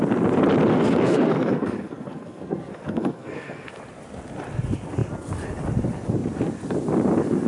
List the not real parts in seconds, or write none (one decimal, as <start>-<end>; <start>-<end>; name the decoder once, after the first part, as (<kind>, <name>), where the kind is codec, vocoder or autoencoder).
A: 0.7-3.7 (codec, SNAC)